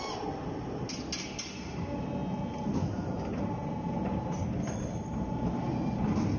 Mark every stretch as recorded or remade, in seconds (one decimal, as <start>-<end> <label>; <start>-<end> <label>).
0.0-6.4 recorded